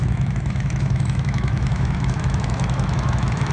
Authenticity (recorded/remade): remade